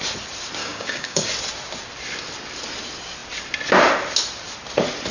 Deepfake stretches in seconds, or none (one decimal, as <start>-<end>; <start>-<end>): 0.6-1.3